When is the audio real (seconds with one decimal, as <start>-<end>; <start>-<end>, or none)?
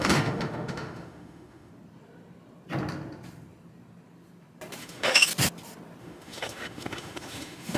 1.7-4.8; 5.3-6.0